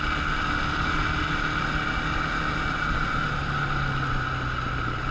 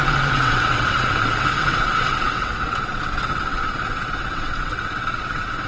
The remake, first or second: second